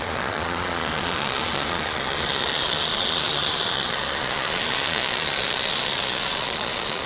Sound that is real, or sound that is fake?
fake